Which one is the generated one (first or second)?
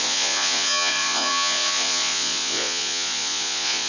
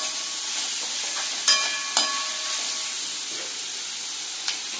first